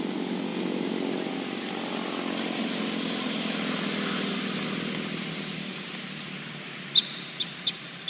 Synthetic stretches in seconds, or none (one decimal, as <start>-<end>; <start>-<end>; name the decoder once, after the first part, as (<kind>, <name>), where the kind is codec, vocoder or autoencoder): none